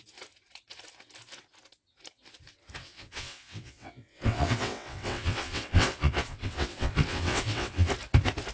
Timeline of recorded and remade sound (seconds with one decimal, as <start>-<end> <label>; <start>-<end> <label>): 0.0-2.8 recorded; 2.8-7.9 remade; 7.9-8.5 recorded